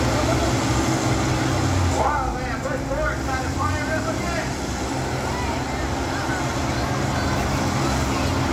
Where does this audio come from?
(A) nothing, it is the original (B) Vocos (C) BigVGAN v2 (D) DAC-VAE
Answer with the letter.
A